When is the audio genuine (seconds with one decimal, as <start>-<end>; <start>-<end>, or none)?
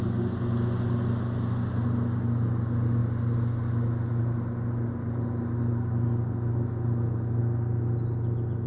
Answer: 0.0-8.7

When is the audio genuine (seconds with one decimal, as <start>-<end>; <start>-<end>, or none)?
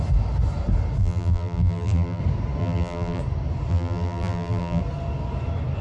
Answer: 0.0-1.0; 2.2-2.6; 3.2-3.7; 4.8-5.8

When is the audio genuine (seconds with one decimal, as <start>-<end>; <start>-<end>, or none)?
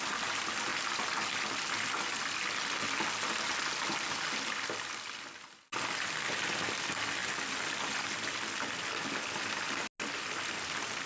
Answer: 0.0-11.1